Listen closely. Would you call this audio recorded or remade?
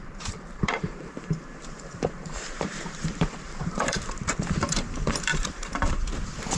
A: remade